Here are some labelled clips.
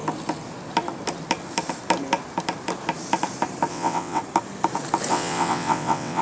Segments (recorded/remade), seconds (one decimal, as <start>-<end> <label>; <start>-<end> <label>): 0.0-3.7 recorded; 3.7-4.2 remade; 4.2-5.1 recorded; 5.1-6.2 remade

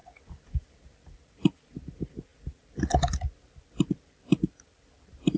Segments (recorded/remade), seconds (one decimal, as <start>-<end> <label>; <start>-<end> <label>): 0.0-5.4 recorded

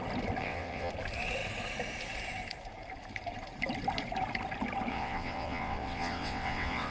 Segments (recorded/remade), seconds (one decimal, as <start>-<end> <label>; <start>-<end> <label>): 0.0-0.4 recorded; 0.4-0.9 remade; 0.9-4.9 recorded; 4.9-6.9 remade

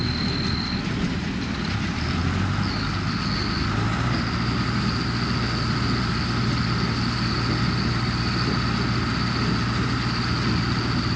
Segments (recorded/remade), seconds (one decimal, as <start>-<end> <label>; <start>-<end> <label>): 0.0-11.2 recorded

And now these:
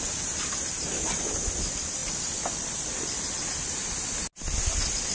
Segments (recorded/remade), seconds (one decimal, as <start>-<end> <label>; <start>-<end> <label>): 0.0-5.1 recorded

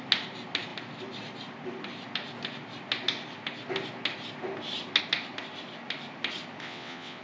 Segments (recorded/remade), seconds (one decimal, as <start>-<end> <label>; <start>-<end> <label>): 0.0-6.6 recorded; 6.6-7.2 remade